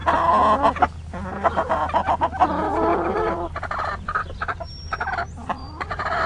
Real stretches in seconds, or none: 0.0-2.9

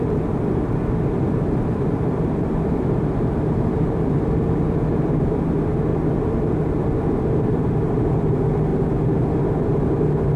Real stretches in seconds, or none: 5.9-6.9

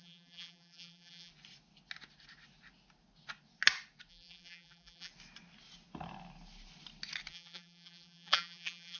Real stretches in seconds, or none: 1.3-4.1; 5.1-7.3

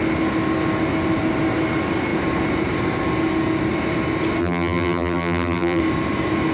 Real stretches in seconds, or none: 0.0-4.4; 5.8-6.5